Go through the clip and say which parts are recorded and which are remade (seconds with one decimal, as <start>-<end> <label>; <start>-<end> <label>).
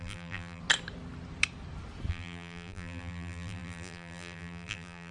0.0-0.6 remade; 0.6-2.1 recorded; 2.1-5.1 remade